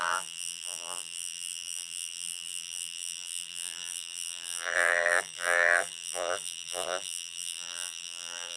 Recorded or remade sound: remade